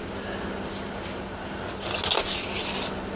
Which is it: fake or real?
real